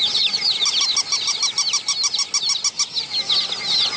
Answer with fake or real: real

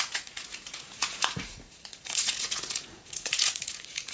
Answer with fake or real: fake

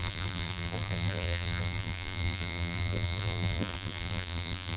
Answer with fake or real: fake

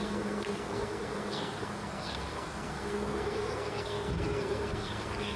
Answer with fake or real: fake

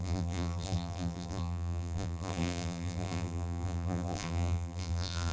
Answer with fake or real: fake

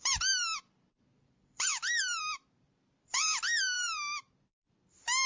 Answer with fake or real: fake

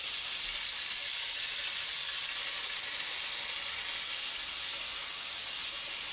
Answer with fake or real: real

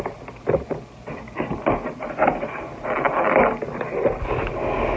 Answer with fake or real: real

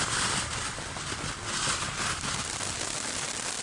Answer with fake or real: real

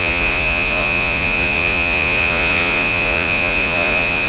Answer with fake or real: fake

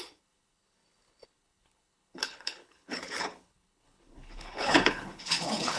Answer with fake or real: fake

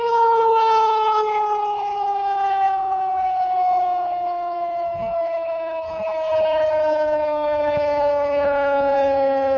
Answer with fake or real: fake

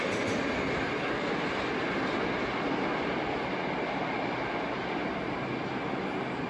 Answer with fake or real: real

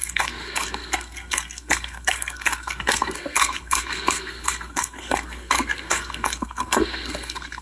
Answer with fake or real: fake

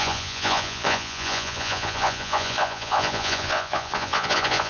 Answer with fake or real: fake